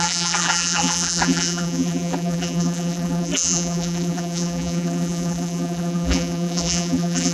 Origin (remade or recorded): remade